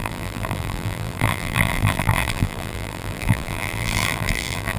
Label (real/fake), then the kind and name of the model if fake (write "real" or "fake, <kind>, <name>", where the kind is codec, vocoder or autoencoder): fake, vocoder, BigVGAN v2